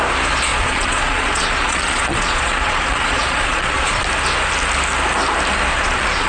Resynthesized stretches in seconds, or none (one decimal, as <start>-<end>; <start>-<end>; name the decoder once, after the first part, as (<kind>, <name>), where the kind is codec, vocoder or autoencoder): 0.5-4.0 (vocoder, Vocos); 5.7-6.3